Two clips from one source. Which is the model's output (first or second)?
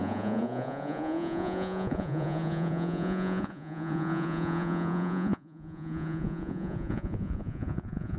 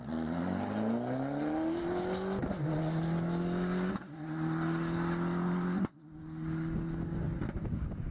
first